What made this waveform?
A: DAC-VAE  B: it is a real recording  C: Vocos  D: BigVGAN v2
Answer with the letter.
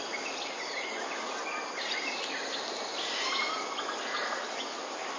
B